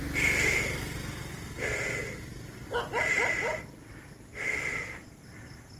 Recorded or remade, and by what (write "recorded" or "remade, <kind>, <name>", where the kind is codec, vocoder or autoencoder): recorded